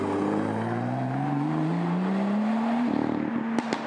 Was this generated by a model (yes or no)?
no